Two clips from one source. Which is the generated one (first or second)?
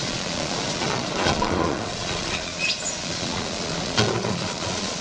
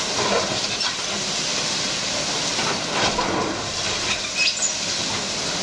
first